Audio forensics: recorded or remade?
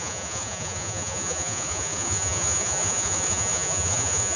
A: remade